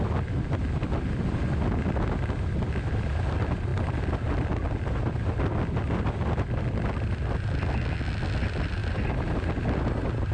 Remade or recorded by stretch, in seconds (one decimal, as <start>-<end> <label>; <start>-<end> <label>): 0.0-10.3 recorded